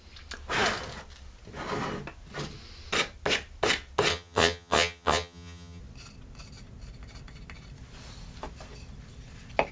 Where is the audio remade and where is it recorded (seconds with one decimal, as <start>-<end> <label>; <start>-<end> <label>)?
0.0-4.1 recorded; 4.1-5.8 remade; 5.8-9.7 recorded